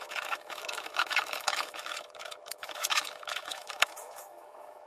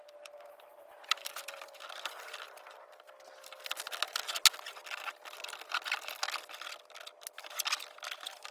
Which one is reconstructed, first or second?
first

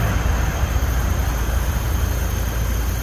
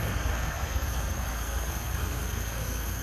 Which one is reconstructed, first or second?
second